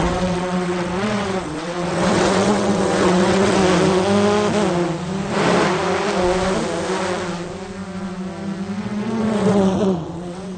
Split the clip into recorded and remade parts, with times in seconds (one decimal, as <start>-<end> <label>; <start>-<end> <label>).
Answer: 0.0-3.6 remade; 3.6-8.8 recorded; 8.8-10.6 remade